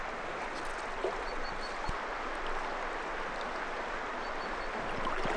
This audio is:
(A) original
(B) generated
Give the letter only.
A